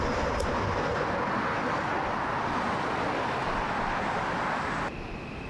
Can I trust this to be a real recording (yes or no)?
yes